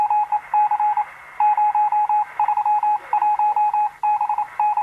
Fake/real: real